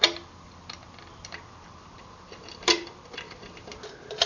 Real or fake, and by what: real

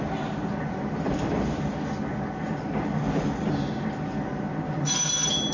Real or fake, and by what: real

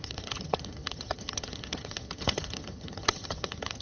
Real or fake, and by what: fake, vocoder, HiFi-GAN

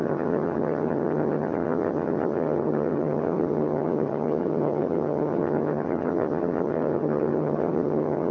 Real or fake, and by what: fake, vocoder, HiFi-GAN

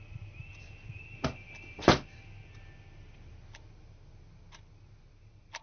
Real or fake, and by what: real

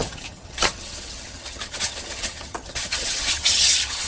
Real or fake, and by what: fake, vocoder, HiFi-GAN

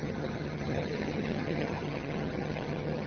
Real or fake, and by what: fake, vocoder, HiFi-GAN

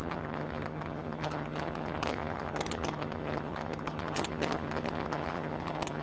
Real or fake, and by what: fake, vocoder, HiFi-GAN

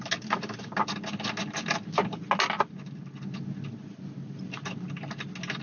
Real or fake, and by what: real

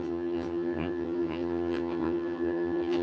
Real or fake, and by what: fake, vocoder, HiFi-GAN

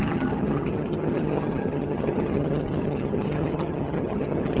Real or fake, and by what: fake, vocoder, HiFi-GAN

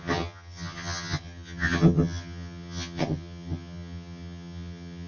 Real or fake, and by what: fake, vocoder, HiFi-GAN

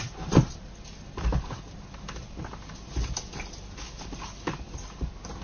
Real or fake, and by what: real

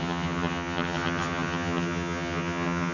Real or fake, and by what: fake, vocoder, HiFi-GAN